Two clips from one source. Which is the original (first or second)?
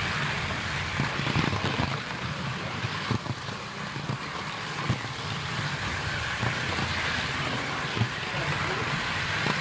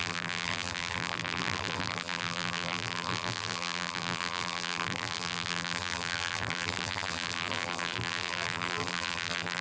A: first